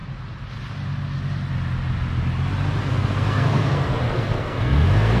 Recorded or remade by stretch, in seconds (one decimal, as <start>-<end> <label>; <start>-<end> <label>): 0.0-2.8 recorded; 2.8-5.2 remade